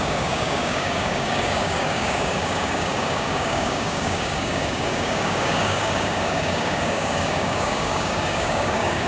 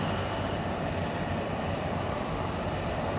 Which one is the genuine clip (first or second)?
second